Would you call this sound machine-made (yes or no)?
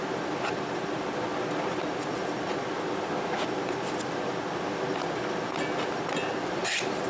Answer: no